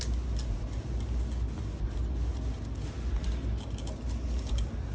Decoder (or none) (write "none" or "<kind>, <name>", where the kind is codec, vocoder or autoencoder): none